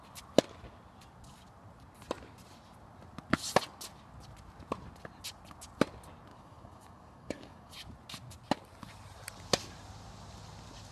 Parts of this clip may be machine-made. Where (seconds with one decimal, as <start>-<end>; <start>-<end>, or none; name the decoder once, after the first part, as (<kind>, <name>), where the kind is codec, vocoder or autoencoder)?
6.3-7.7 (codec, DAC)